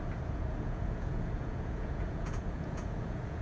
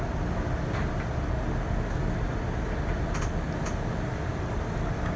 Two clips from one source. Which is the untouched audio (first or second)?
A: second